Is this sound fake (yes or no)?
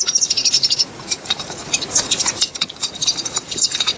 yes